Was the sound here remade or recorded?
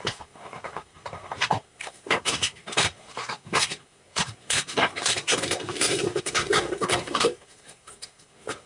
remade